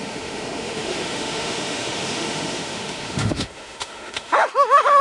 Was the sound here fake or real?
fake